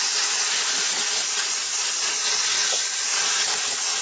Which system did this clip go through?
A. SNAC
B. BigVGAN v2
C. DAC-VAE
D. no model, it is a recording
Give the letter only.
D